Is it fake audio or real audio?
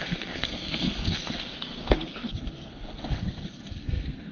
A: fake